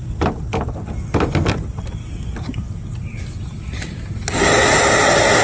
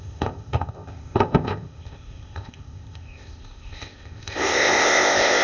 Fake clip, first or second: second